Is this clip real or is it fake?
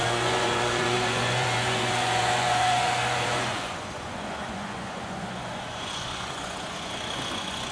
fake